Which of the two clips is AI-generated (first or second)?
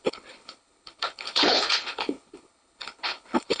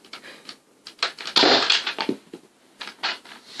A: first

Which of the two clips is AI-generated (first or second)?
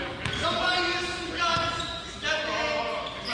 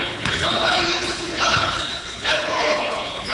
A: second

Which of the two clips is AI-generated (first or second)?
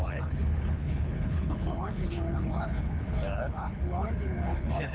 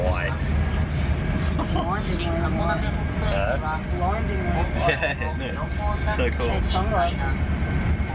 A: first